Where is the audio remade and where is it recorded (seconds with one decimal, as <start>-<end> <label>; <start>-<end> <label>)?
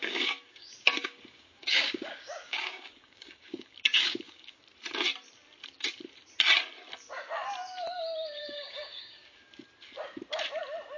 0.0-4.6 remade; 4.6-8.4 recorded; 8.4-9.5 remade; 9.5-11.0 recorded